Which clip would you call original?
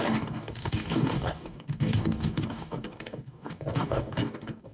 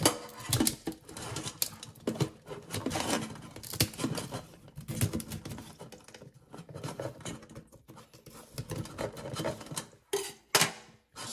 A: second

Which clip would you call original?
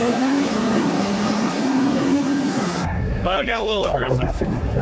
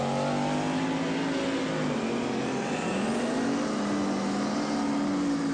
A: second